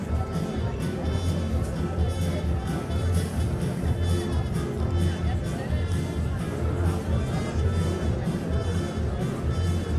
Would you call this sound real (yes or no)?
yes